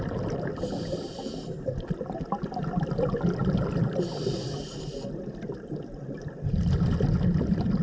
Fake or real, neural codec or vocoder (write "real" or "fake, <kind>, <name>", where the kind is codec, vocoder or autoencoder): real